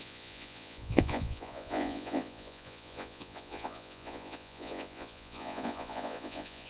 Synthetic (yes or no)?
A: yes